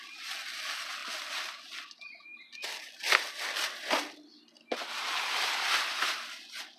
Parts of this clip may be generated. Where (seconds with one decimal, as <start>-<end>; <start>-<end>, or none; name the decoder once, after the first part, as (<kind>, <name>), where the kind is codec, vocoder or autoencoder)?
none